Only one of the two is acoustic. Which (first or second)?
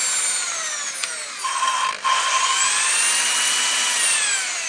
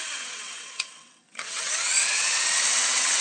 first